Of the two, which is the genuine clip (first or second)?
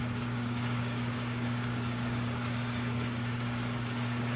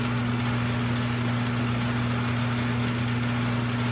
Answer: second